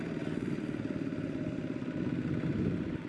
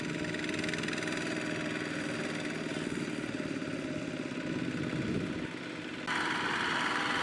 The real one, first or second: second